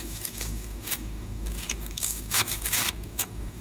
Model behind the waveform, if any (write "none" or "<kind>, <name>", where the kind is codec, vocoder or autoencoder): codec, DAC